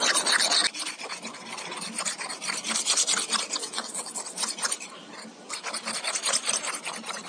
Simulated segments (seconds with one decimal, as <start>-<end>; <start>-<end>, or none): 3.6-4.1